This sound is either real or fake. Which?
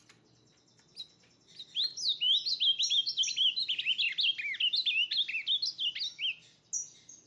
real